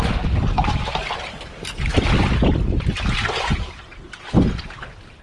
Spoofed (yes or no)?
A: no